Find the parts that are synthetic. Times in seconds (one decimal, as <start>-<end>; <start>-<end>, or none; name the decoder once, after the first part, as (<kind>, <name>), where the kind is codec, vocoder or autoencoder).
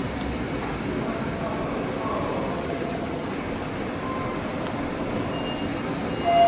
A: 2.5-3.3 (vocoder, HiFi-GAN)